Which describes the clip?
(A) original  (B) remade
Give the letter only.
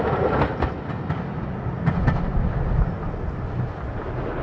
A